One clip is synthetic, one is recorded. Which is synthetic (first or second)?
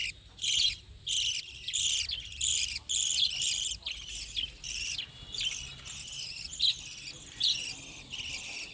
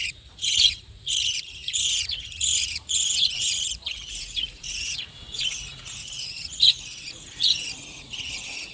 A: second